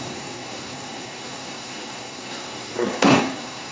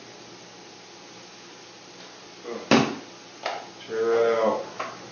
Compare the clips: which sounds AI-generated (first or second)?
first